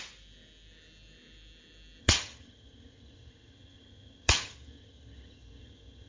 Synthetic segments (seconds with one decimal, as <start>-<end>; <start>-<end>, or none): 2.0-6.1